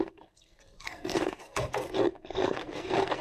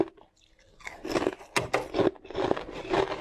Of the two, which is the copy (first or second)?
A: first